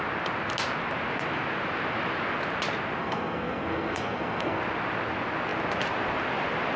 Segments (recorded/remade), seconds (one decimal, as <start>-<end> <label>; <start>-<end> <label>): 0.0-3.0 recorded; 3.0-4.6 remade; 4.6-6.8 recorded